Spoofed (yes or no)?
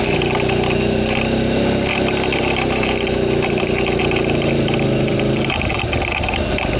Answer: yes